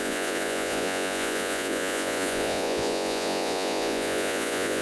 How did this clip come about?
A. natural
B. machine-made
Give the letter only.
B